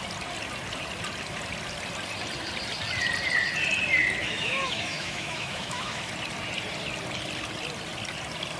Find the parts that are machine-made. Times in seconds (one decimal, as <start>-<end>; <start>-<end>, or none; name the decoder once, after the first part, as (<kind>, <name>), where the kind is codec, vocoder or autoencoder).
4.2-6.1 (autoencoder, DAC-VAE)